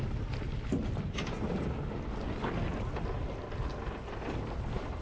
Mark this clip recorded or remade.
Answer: recorded